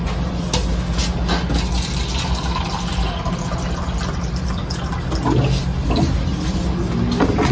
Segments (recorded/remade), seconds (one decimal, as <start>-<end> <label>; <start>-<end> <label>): 0.0-7.5 recorded